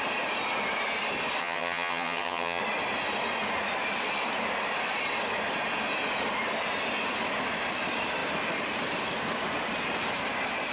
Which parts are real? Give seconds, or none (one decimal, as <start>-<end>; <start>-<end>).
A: 0.0-1.4; 2.6-10.7